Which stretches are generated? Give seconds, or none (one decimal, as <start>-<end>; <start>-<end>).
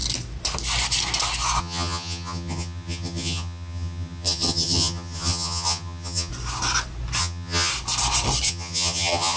1.6-6.3; 7.2-7.7; 8.5-9.4